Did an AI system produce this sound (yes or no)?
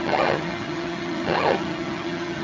yes